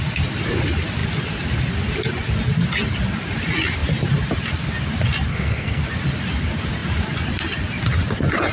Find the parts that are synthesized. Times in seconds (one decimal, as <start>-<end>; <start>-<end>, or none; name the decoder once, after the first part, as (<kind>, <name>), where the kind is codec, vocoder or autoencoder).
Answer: 5.3-5.8 (codec, SNAC)